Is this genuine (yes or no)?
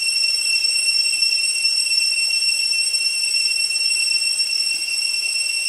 yes